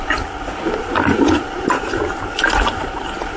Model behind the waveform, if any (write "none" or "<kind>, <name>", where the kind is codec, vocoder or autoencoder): vocoder, BigVGAN v2